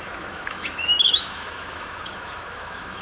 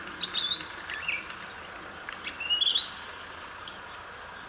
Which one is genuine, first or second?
second